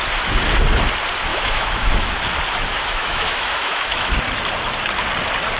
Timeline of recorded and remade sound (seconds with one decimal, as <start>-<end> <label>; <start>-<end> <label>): 0.0-1.3 recorded; 1.3-2.1 remade; 2.1-2.7 recorded; 2.7-4.1 remade; 4.1-5.6 recorded